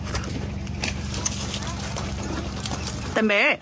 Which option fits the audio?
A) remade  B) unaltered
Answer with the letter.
A